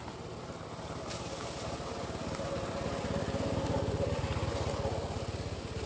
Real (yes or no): yes